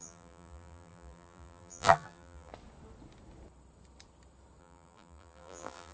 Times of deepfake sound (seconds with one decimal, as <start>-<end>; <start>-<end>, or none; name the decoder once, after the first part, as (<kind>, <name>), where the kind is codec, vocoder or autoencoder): 0.0-2.5 (vocoder, BigVGAN v2); 4.6-5.9